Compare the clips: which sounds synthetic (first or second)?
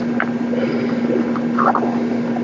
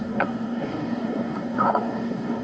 second